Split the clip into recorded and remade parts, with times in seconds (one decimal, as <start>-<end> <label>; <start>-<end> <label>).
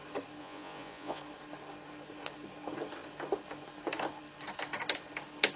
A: 0.0-0.4 recorded; 0.4-1.2 remade; 1.2-5.6 recorded